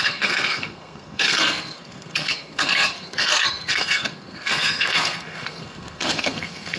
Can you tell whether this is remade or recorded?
remade